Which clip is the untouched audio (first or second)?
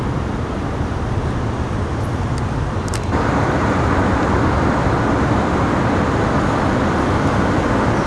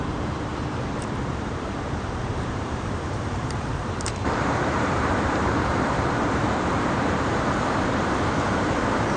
first